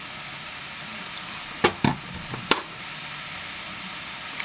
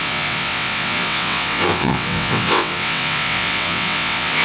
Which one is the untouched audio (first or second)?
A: first